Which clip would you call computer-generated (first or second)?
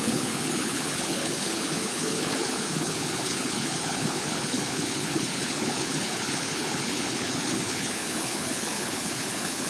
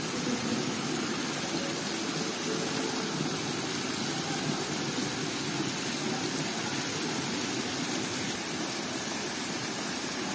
first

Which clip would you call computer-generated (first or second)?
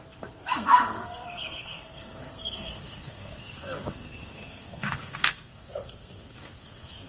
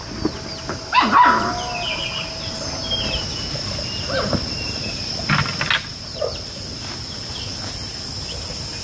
first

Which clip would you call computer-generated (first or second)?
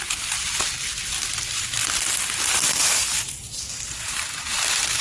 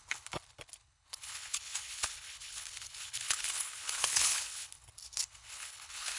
second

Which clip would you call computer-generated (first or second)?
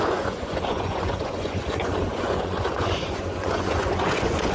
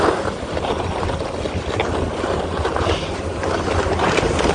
first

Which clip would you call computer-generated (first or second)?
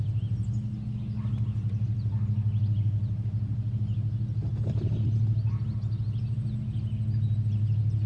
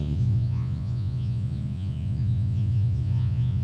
second